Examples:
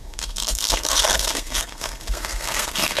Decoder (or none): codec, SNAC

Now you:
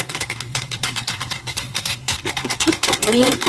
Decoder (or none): codec, SNAC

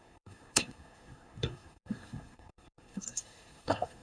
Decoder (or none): codec, SNAC